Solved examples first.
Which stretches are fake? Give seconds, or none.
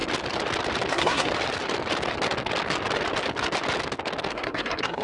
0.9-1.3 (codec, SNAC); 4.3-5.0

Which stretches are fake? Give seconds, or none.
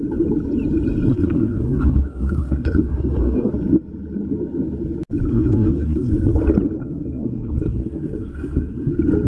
1.1-3.5 (codec, SNAC); 5.3-6.1; 6.8-8.9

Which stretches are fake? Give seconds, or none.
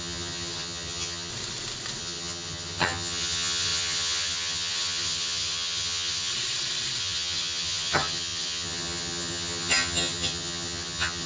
0.0-1.3 (vocoder, HiFi-GAN); 2.0-6.3; 7.0-11.3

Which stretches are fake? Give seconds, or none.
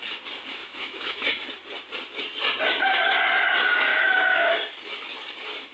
0.6-1.3 (autoencoder, DAC-VAE); 3.9-4.5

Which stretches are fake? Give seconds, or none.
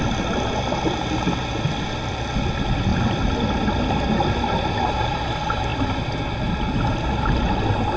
none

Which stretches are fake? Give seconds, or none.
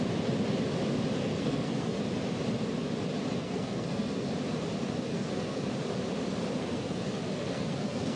1.2-2.0 (codec, SNAC); 3.4-4.3; 5.1-5.7; 6.6-8.2